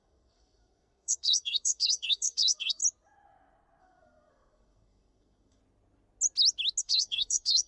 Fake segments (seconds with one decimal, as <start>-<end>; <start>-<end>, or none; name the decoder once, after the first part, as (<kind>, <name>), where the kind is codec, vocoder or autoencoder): 0.0-2.8 (codec, SNAC); 3.8-5.6; 6.8-7.7